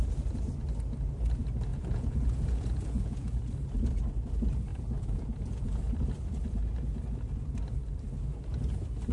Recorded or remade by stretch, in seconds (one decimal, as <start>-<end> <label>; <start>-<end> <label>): 0.0-1.7 recorded; 1.7-3.4 remade; 3.4-4.7 recorded; 4.7-5.8 remade; 5.8-9.1 recorded